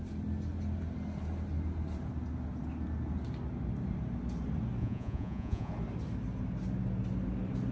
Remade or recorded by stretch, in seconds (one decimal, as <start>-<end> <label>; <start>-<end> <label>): 0.0-4.8 recorded; 4.8-5.7 remade; 5.7-7.7 recorded